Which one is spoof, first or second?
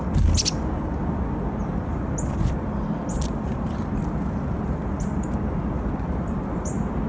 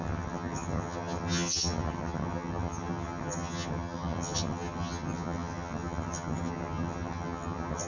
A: second